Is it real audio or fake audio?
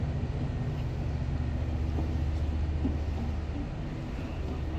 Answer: real